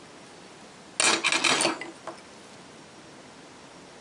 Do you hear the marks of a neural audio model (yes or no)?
no